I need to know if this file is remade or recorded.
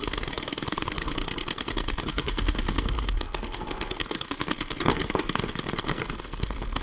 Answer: remade